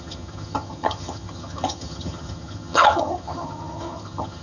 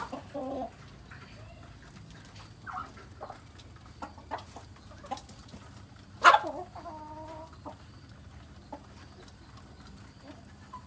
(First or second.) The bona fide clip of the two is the second